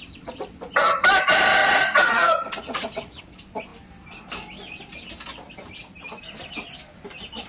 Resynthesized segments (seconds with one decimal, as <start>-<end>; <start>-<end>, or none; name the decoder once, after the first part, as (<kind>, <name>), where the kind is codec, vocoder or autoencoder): 1.6-3.2 (vocoder, Vocos)